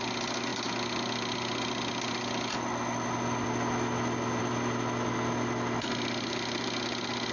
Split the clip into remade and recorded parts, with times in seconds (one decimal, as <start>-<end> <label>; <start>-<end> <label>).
0.0-7.3 recorded